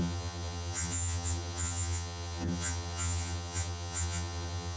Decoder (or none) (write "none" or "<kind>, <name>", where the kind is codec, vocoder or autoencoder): vocoder, HiFi-GAN